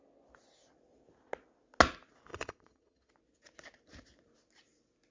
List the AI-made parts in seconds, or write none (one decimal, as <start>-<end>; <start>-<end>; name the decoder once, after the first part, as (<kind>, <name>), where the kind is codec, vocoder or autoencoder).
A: 2.3-3.1 (vocoder, Vocos)